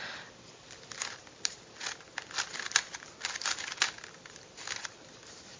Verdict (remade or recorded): recorded